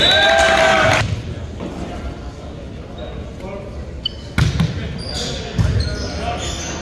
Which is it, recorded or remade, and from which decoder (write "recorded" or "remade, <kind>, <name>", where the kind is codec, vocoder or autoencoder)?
recorded